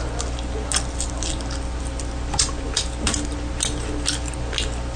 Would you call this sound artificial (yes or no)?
no